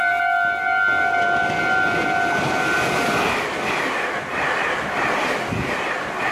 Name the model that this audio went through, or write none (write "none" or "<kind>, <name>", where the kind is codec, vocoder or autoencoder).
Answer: none